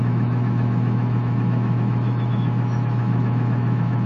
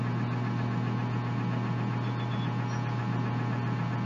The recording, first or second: second